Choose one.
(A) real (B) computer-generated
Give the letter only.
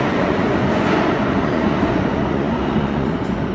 B